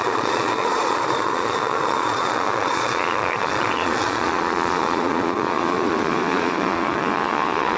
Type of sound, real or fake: fake